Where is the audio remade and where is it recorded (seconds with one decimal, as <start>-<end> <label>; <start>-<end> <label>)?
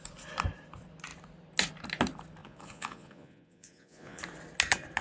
0.0-2.4 recorded; 2.4-4.2 remade; 4.2-5.0 recorded